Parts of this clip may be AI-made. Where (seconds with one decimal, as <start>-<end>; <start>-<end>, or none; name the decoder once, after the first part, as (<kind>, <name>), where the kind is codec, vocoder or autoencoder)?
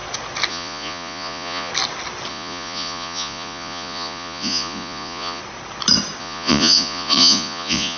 0.5-1.7 (vocoder, Vocos); 2.3-5.4; 6.2-8.0